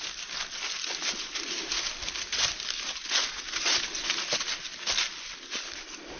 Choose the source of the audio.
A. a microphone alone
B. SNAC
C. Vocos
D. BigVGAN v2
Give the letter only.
A